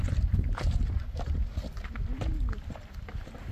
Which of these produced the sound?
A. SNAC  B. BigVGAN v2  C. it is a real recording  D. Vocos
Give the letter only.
B